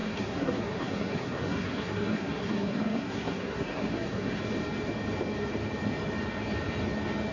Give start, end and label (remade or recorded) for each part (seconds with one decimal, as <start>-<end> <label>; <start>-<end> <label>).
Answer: 0.0-4.4 remade; 4.4-7.3 recorded